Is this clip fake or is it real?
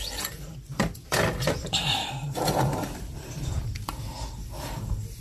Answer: fake